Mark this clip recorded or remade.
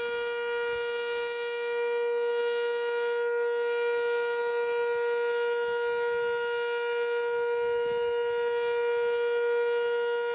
recorded